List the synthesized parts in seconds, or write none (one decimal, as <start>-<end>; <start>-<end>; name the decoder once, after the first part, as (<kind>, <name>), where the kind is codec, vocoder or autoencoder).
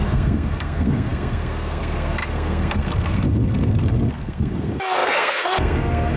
0.0-6.2 (codec, SNAC)